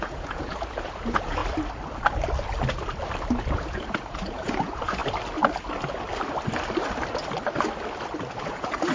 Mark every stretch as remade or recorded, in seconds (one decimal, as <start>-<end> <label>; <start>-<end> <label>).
0.0-1.4 remade; 1.4-3.4 recorded; 3.4-5.0 remade; 5.0-8.4 recorded; 8.4-8.9 remade